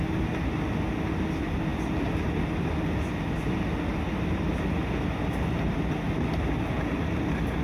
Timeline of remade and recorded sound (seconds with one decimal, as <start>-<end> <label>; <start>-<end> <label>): 0.0-7.6 recorded